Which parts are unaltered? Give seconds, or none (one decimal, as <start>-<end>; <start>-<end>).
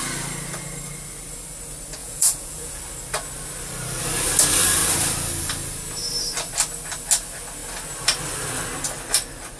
0.0-2.0; 2.8-9.6